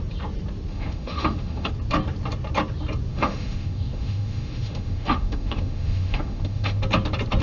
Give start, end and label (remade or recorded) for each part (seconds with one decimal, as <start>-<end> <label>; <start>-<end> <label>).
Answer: 0.0-0.7 recorded; 0.7-1.7 remade; 1.7-3.1 recorded; 3.1-6.8 remade; 6.8-7.4 recorded